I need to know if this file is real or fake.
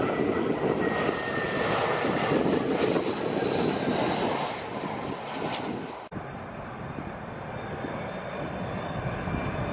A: real